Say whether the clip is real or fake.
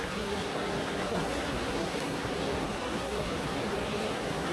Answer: fake